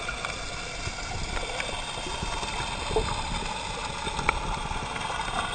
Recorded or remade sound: recorded